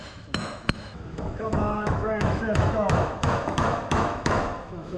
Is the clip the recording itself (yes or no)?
no